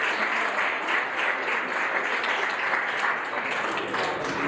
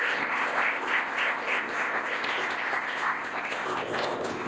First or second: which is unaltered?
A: first